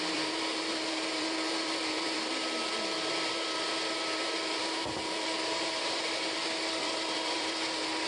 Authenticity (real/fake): fake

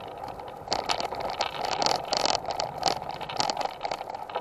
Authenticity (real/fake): real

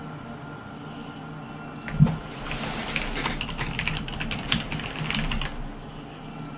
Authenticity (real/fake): real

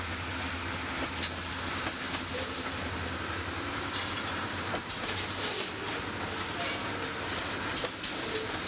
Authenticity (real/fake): real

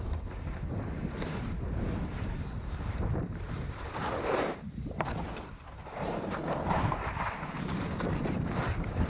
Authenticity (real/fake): fake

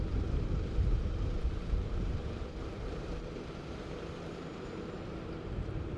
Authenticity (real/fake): fake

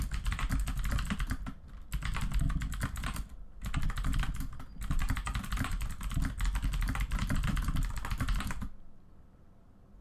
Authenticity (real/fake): real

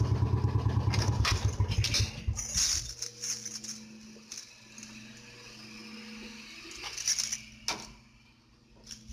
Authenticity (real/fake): real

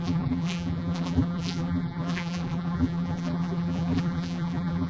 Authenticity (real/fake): fake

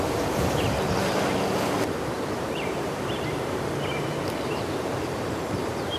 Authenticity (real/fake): fake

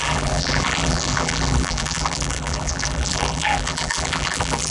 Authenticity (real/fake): fake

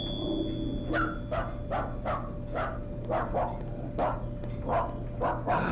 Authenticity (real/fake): real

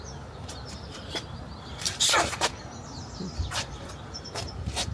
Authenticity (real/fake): fake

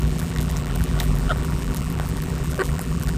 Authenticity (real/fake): fake